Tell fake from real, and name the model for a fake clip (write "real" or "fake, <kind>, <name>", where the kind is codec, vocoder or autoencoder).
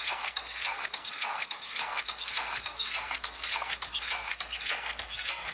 fake, codec, SNAC